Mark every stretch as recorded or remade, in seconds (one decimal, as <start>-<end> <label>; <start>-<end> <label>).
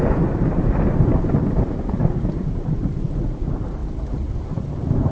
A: 0.0-5.1 recorded